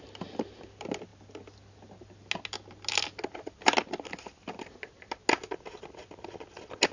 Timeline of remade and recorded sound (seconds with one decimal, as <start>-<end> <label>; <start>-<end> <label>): 0.0-6.9 recorded